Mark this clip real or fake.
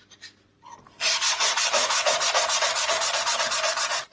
real